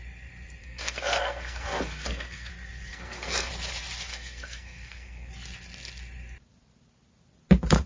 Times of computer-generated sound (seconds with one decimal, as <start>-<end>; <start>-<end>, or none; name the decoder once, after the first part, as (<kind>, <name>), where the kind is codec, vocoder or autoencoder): 0.6-2.5 (codec, SNAC); 2.9-3.5; 4.1-5.3